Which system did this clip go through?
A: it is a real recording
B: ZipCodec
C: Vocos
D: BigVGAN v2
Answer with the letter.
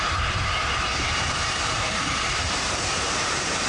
D